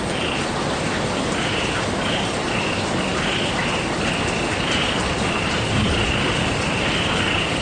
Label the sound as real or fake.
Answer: real